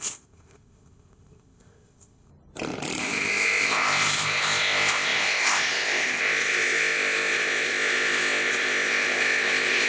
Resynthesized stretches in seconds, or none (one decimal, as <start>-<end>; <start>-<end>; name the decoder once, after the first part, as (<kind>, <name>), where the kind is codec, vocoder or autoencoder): 0.0-2.3 (codec, ZipCodec); 3.0-9.9